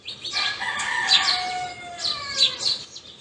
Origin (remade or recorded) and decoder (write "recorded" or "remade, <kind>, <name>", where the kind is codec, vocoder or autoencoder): recorded